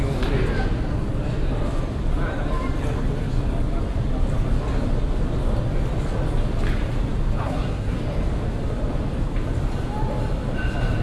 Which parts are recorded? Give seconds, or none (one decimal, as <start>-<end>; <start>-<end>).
0.0-7.4; 8.0-11.0